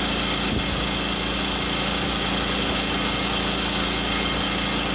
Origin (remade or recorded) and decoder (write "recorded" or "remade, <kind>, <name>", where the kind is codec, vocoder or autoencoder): recorded